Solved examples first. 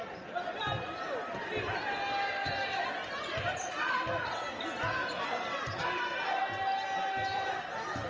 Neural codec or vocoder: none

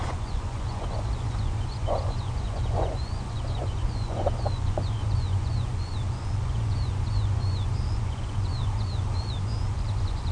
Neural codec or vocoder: vocoder, Vocos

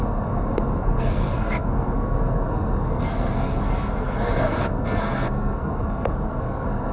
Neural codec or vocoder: codec, SNAC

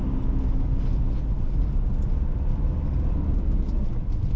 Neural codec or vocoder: none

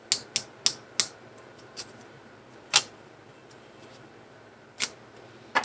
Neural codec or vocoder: none